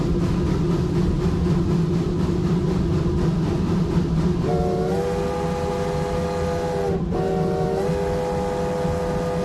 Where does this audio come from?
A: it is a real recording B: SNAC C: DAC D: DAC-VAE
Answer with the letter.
A